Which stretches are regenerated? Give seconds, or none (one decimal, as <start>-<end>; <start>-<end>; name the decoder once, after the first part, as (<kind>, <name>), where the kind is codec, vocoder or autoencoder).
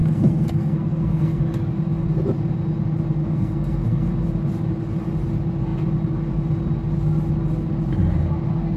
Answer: 0.0-1.4 (codec, SNAC); 3.2-4.1